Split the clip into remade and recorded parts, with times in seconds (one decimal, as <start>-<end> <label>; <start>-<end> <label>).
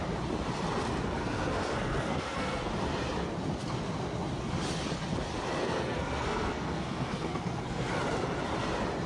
0.0-1.2 recorded; 1.2-2.7 remade; 2.7-5.6 recorded; 5.6-7.9 remade; 7.9-9.1 recorded